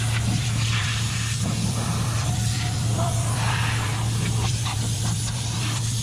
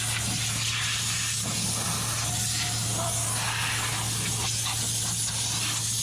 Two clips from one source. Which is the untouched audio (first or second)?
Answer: second